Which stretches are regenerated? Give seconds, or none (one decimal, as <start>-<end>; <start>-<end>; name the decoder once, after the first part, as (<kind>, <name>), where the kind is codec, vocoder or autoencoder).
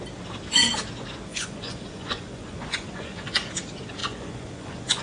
1.3-3.5 (vocoder, Vocos); 4.0-5.0